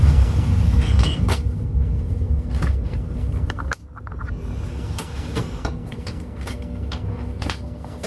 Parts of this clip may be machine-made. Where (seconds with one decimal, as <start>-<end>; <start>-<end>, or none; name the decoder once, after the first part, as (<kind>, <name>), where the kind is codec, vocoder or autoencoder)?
0.0-3.8 (codec, SNAC); 4.7-8.1